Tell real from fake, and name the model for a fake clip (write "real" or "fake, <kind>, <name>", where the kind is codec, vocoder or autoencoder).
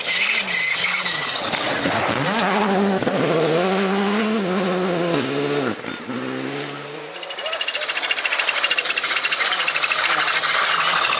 real